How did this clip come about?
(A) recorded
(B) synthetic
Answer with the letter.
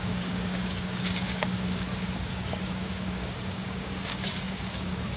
B